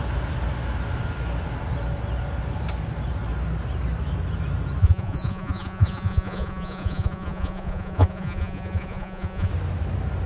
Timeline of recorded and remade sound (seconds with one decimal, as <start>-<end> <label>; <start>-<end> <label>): 0.0-4.8 recorded; 4.8-9.5 remade; 9.5-10.3 recorded